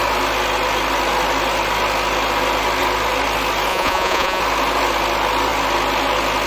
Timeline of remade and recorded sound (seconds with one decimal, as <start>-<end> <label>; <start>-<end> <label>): 0.0-3.7 recorded; 3.7-4.4 remade; 4.4-6.5 recorded